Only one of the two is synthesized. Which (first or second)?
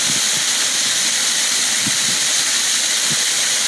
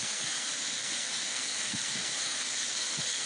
second